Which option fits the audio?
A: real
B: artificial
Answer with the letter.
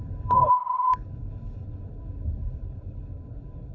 B